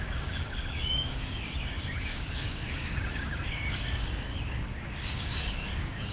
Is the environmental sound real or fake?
fake